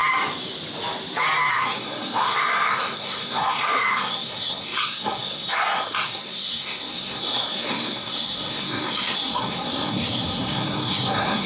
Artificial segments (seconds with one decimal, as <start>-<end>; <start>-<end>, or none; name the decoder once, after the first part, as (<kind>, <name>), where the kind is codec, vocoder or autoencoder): 1.5-11.5 (codec, SNAC)